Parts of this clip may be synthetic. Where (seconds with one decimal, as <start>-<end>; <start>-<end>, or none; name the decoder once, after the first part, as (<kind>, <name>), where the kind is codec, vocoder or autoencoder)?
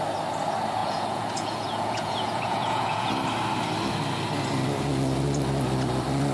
0.8-3.1 (vocoder, Vocos)